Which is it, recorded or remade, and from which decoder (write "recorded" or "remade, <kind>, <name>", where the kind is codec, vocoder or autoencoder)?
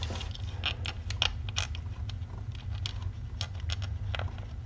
recorded